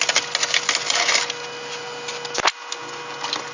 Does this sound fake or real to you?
real